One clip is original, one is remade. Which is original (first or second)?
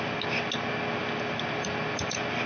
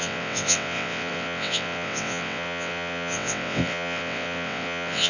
first